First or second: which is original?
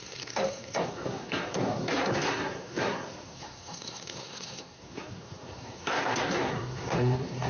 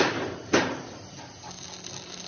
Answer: second